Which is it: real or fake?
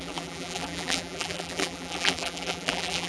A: fake